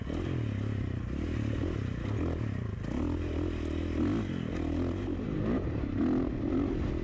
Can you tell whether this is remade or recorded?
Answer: recorded